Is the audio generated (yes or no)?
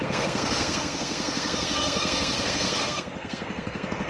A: yes